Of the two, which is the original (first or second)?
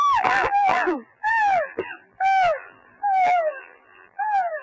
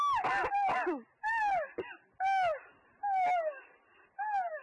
second